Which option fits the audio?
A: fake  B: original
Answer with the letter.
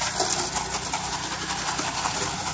B